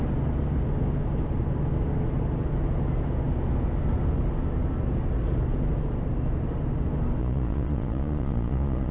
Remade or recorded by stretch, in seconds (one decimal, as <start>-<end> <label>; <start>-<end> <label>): 0.0-7.2 recorded; 7.2-8.9 remade